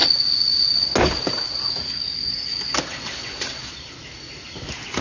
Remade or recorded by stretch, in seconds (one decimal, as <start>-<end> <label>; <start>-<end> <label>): 0.0-5.0 recorded